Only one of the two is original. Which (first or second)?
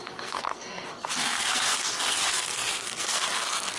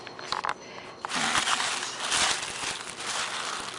second